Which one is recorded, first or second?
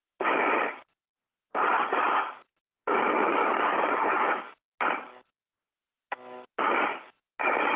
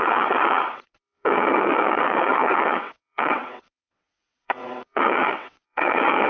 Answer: first